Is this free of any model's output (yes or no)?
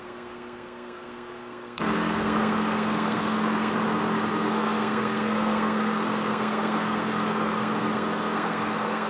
no